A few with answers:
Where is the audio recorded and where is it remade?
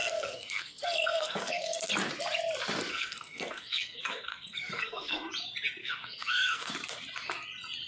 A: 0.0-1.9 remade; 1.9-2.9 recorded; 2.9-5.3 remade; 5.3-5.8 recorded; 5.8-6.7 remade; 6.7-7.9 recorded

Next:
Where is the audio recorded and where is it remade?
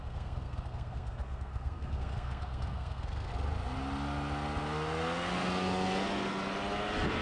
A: 0.0-3.3 remade; 3.3-7.2 recorded